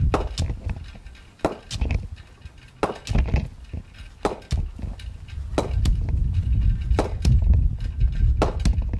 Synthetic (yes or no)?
no